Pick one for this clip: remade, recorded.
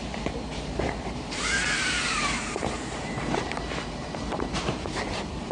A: remade